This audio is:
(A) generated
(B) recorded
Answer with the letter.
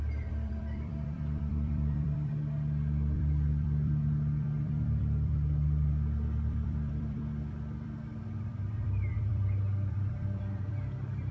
A